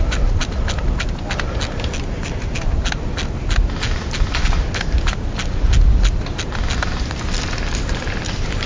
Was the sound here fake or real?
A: real